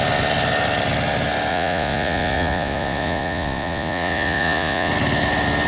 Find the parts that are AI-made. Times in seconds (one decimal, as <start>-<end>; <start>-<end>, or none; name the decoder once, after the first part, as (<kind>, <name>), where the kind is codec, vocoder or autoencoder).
1.5-4.9 (vocoder, Vocos)